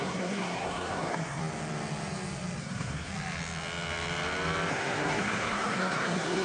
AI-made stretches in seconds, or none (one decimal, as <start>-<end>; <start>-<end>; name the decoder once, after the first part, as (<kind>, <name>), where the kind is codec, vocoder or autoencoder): 0.0-1.4 (codec, SNAC); 2.6-3.1; 4.7-6.4